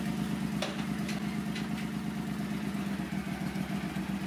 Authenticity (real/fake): real